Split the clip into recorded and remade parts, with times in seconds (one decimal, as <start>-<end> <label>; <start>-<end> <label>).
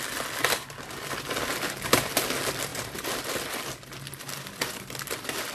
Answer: 0.0-2.7 recorded; 2.7-3.2 remade; 3.2-5.5 recorded